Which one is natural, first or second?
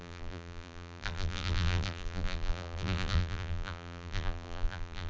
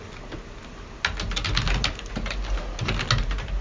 second